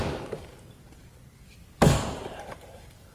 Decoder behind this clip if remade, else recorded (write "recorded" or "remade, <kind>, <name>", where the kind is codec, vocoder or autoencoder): remade, vocoder, BigVGAN v2